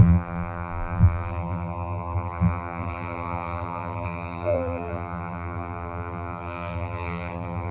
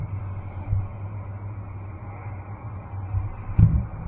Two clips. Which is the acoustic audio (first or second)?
second